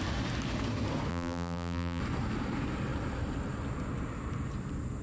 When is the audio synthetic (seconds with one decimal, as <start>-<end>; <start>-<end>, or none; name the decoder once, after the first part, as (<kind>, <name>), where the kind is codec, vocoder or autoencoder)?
1.1-2.0 (vocoder, BigVGAN v2)